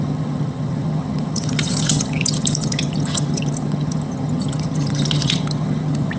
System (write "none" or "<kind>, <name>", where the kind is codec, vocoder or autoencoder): vocoder, HiFi-GAN